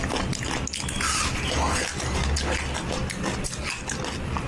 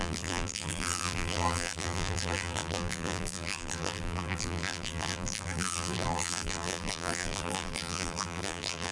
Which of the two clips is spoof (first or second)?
second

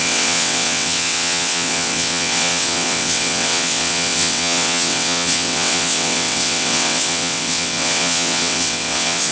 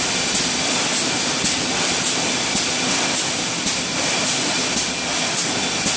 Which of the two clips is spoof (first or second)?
first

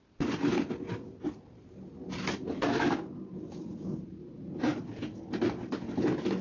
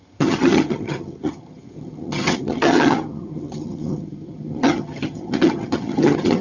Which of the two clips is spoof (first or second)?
second